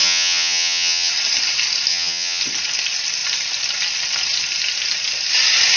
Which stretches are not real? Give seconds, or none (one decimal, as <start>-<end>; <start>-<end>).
0.0-1.1; 1.9-2.4